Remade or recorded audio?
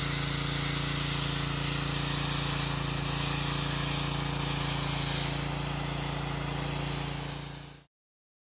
recorded